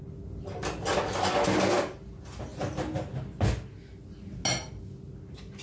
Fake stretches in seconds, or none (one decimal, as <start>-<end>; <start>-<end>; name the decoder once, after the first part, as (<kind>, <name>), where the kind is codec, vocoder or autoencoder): none